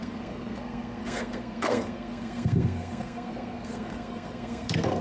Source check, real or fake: fake